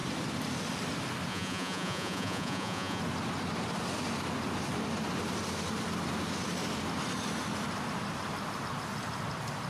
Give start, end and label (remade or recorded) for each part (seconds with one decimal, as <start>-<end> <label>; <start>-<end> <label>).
0.0-1.3 recorded; 1.3-3.0 remade; 3.0-9.7 recorded